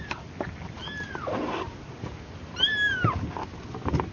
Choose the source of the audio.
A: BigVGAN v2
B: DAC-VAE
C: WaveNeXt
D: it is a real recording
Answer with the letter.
D